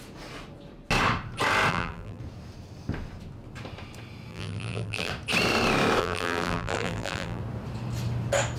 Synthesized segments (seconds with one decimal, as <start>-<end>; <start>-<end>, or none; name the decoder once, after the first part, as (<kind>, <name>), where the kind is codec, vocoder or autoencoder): 1.7-2.2 (vocoder, BigVGAN v2); 4.3-5.1; 6.0-7.4